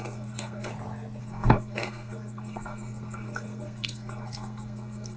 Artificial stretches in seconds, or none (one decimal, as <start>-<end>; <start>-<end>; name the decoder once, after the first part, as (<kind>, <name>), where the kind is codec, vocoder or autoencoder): 0.0-0.7 (codec, SNAC); 1.2-5.2